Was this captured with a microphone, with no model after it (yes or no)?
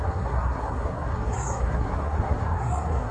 no